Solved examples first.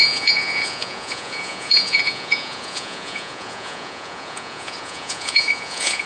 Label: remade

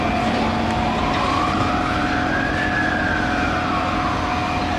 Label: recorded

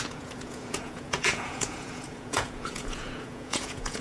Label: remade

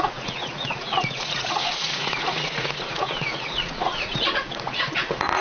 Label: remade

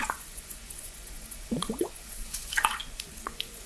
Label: remade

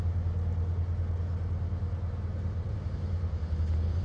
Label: recorded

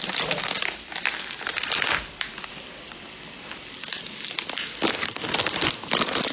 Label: recorded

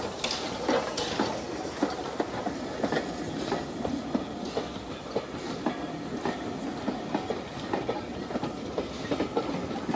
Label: recorded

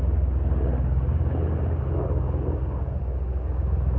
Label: recorded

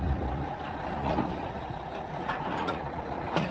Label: remade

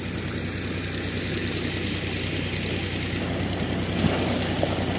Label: recorded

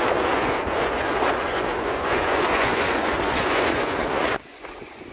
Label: remade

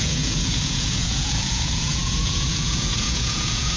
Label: remade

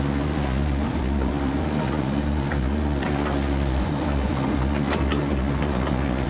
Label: remade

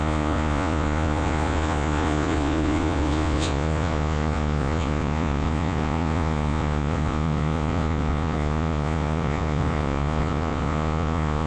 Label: remade